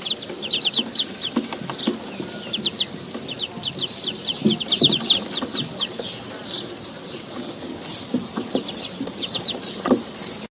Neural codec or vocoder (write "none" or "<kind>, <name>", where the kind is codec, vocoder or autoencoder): none